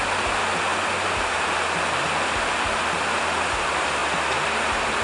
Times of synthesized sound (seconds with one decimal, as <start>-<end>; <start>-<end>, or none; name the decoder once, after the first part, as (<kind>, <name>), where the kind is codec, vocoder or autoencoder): none